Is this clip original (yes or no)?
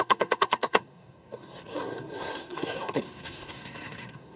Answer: no